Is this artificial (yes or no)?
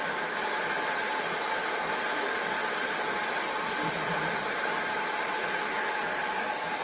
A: no